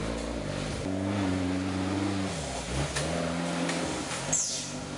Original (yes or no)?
yes